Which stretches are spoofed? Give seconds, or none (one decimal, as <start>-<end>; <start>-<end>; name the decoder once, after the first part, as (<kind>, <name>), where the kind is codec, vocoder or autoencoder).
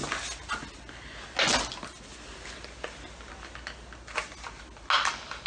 none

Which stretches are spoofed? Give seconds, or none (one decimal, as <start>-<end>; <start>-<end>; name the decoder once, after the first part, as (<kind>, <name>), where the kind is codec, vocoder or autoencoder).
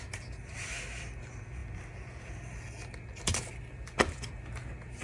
none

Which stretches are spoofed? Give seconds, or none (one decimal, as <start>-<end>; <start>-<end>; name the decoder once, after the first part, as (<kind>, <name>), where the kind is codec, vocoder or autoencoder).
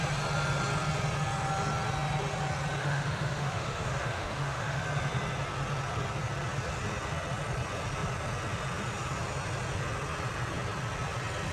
2.8-4.8 (autoencoder, DAC-VAE)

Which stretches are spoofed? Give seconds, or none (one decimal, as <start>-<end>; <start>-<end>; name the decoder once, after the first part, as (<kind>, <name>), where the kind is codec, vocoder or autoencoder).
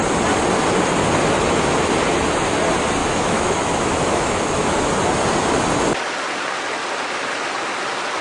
3.0-4.9 (autoencoder, DAC-VAE)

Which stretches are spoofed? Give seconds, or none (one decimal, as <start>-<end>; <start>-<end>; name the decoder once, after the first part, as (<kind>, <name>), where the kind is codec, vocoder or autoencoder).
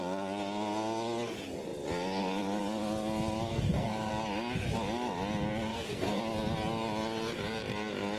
3.5-4.1 (codec, SNAC); 5.7-6.2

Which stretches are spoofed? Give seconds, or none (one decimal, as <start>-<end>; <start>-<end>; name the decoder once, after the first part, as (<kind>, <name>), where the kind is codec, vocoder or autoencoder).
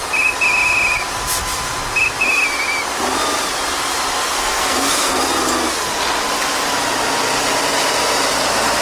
4.2-5.2 (codec, SNAC)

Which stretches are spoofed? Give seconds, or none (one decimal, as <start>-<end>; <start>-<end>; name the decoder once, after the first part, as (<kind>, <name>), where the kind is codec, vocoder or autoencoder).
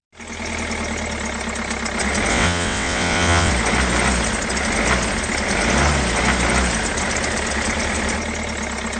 2.3-3.5 (vocoder, WaveNeXt)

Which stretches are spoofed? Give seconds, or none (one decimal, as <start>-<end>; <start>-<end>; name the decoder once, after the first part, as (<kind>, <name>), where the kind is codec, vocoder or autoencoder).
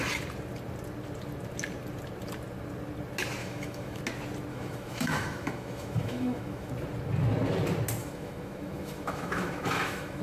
3.4-4.0 (autoencoder, DAC-VAE); 4.5-6.7; 8.0-10.2